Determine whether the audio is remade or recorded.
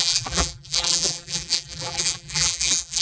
remade